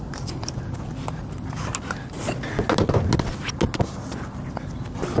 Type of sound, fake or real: real